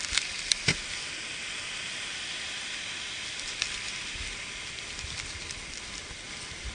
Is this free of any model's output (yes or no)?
yes